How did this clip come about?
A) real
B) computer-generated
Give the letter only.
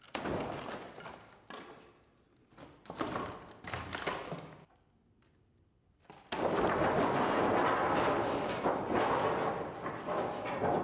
A